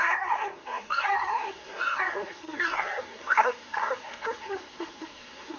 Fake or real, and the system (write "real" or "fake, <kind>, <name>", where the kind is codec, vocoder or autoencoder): fake, codec, SNAC